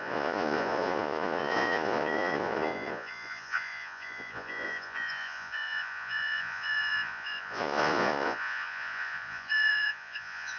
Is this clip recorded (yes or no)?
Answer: no